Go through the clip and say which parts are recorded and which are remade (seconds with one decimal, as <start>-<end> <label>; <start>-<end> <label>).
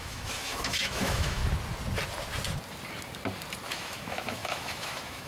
0.0-1.4 remade; 1.4-3.7 recorded; 3.7-5.3 remade